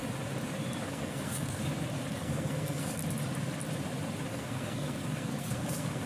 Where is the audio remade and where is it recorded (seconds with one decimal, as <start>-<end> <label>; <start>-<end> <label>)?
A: 0.0-0.9 recorded; 0.9-1.6 remade; 1.6-2.1 recorded; 2.1-3.0 remade; 3.0-4.3 recorded; 4.3-6.1 remade